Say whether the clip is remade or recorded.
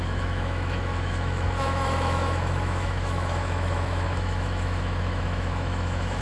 remade